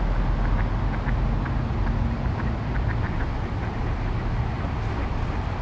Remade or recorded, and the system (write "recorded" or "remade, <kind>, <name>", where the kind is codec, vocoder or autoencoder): recorded